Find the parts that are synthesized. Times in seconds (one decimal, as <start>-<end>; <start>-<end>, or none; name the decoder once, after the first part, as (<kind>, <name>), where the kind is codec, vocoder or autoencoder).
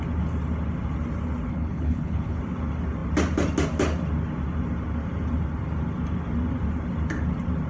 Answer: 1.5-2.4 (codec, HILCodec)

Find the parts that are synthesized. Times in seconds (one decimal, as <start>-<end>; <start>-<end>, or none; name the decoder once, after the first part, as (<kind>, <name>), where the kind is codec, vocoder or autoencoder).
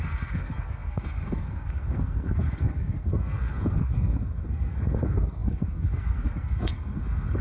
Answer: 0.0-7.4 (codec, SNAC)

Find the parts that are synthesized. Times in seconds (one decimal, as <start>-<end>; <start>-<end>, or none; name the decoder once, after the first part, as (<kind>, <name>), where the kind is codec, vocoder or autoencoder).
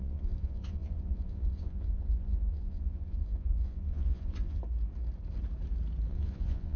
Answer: 0.0-4.6 (vocoder, Vocos); 6.1-6.8